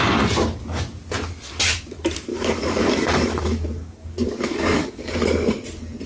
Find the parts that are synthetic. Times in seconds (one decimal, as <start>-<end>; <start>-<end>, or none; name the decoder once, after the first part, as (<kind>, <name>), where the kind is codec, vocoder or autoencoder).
2.3-5.1 (codec, DAC)